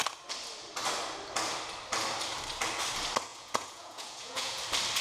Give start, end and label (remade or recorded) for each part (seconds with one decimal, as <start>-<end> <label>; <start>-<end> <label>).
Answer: 0.0-3.3 recorded; 3.3-4.6 remade; 4.6-5.0 recorded